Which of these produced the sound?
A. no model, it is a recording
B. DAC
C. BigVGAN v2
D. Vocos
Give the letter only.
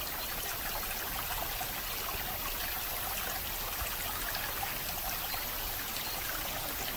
A